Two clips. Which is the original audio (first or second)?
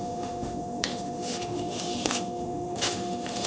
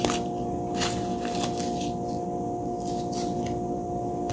second